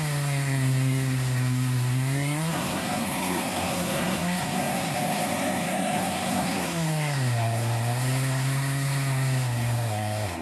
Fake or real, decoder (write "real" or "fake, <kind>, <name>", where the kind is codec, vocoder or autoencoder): fake, codec, SNAC